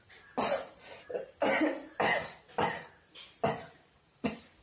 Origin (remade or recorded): recorded